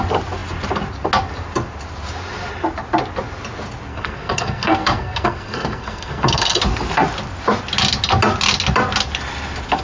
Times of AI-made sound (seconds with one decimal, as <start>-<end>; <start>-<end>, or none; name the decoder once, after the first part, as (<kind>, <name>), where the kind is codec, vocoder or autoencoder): 3.9-6.6 (codec, SNAC)